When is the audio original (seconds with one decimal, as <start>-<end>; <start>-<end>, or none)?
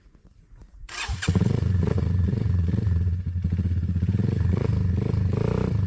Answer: 4.7-5.9